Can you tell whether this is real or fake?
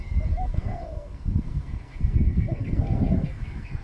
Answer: fake